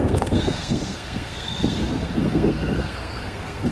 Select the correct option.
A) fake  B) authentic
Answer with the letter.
A